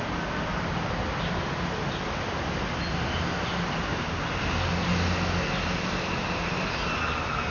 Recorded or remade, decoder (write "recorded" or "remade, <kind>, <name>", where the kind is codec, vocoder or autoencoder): recorded